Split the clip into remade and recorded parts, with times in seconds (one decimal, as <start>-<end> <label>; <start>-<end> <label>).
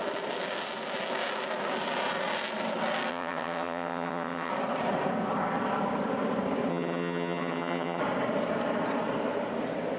0.0-3.1 recorded; 3.1-4.5 remade; 4.5-6.7 recorded; 6.7-8.0 remade; 8.0-10.0 recorded